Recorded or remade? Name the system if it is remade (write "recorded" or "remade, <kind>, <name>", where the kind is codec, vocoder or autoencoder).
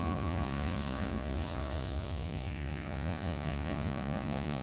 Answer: remade, vocoder, Vocos